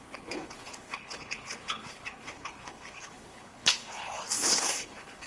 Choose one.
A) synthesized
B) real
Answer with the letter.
A